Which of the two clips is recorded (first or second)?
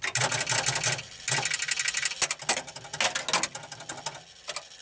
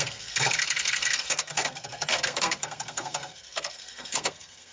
first